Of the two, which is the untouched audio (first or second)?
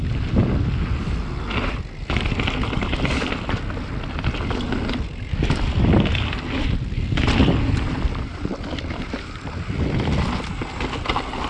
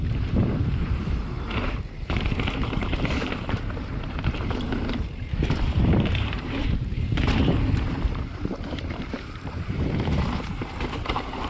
first